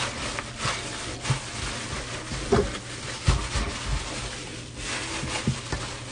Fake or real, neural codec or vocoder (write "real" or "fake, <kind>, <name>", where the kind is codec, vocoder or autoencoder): real